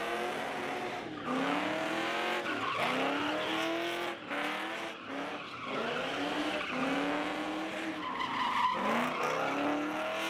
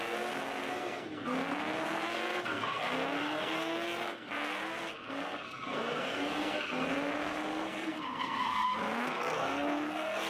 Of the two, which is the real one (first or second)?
first